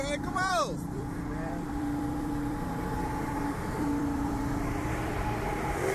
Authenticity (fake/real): fake